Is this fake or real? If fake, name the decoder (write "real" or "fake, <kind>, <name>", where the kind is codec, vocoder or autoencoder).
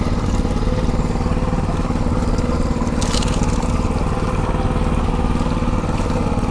real